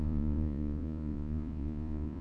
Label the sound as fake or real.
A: fake